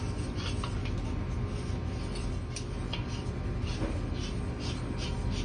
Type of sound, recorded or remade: recorded